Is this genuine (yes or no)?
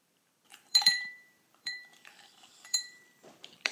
no